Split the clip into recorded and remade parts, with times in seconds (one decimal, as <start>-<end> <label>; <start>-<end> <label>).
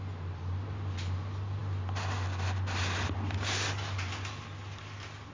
0.0-5.3 recorded